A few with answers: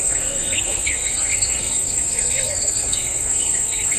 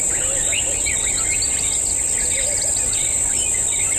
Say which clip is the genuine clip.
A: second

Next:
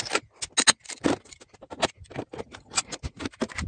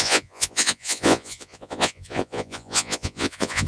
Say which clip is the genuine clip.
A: first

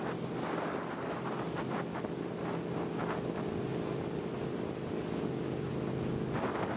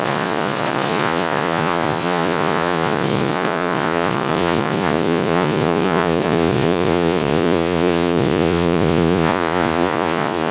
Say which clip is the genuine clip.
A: first